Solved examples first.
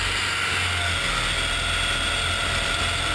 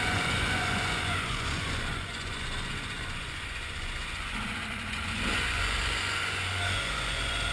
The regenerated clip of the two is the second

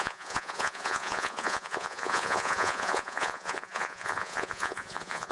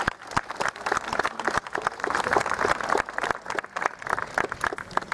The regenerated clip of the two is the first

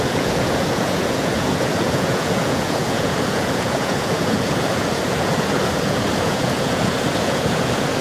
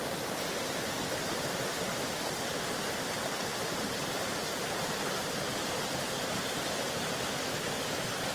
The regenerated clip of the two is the first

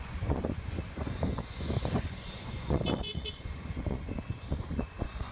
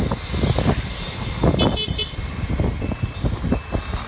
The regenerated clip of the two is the first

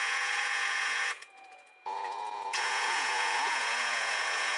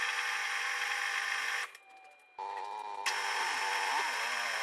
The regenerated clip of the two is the first